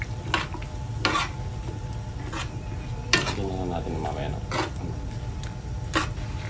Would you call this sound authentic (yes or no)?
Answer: yes